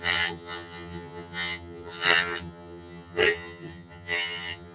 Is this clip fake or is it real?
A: fake